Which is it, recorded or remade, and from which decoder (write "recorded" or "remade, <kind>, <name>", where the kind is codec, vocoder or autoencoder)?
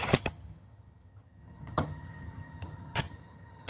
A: remade, vocoder, HiFi-GAN